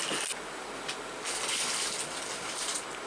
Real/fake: real